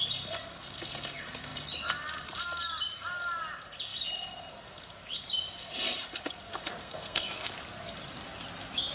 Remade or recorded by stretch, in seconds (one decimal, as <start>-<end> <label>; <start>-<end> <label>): 0.0-6.8 recorded; 6.8-7.5 remade; 7.5-8.9 recorded